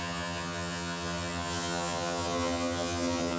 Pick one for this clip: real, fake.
fake